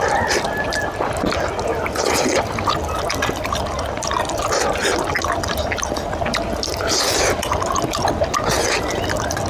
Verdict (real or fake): real